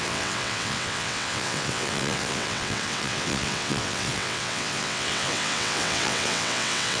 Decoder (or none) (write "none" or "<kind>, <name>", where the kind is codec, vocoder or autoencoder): vocoder, WaveNeXt